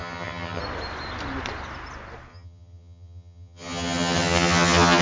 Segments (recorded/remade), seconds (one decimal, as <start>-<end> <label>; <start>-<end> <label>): 0.0-0.6 remade; 0.6-2.3 recorded; 2.3-5.0 remade